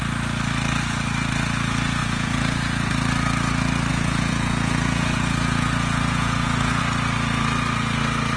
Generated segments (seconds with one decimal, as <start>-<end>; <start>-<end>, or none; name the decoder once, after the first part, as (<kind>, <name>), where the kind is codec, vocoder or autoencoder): 2.0-2.9 (vocoder, Vocos); 3.9-6.8